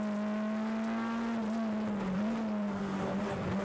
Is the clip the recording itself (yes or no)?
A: yes